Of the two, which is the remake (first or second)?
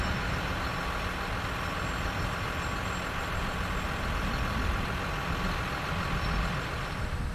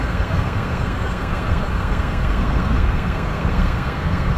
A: second